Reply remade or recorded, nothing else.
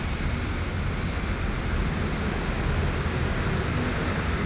recorded